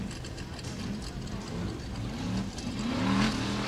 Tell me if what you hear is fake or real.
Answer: real